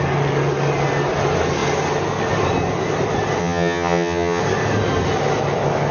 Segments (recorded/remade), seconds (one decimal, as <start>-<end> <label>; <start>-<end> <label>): 0.0-3.4 recorded; 3.4-4.4 remade; 4.4-5.9 recorded